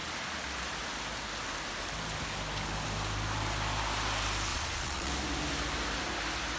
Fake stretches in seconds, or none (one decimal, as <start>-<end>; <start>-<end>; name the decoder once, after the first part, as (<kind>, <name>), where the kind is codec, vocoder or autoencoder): 4.5-5.1 (vocoder, Vocos)